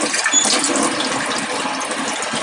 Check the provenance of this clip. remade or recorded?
recorded